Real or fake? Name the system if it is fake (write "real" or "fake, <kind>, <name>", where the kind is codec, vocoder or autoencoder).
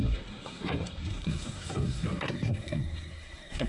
fake, codec, SNAC